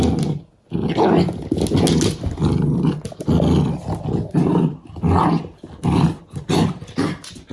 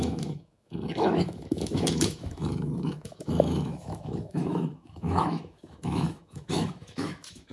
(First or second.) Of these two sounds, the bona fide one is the first